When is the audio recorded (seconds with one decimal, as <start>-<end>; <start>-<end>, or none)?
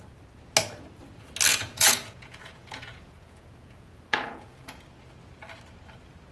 0.0-1.5; 4.8-6.3